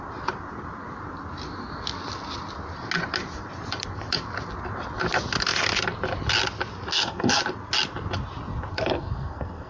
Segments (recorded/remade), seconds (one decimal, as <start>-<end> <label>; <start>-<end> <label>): 0.0-6.9 recorded; 6.9-7.4 remade; 7.4-8.7 recorded; 8.7-9.7 remade